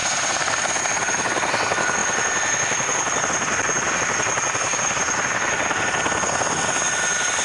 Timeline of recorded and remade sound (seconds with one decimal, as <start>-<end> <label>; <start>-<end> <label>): 0.0-0.8 remade; 0.8-2.0 recorded; 2.0-4.0 remade; 4.0-7.4 recorded